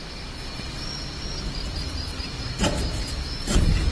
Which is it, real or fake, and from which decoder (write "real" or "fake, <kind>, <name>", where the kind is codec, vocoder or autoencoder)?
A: real